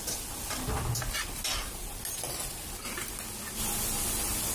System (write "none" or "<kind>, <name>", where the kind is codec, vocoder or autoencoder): none